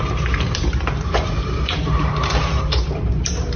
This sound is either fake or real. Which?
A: fake